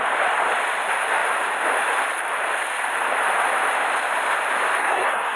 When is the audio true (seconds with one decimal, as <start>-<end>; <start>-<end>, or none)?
0.0-4.8